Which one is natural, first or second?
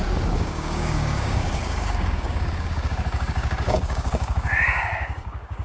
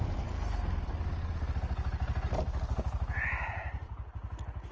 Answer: second